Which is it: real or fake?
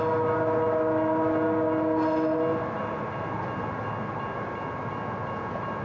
real